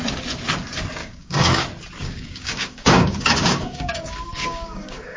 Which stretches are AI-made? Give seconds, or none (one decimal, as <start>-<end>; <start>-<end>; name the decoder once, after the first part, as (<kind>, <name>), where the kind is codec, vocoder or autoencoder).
1.0-1.6 (codec, DAC); 2.0-5.2